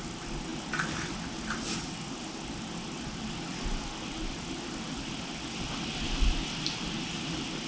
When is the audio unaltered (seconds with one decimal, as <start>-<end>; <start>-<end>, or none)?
0.0-7.7